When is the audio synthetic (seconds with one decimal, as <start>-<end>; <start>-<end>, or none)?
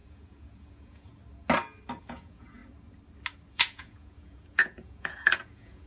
0.0-1.1; 2.0-2.6; 3.5-5.9